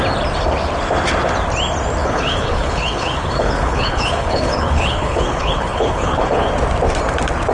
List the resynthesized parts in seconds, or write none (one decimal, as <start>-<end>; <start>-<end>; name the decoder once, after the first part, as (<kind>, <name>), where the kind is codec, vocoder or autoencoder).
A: 2.0-6.5 (codec, HILCodec)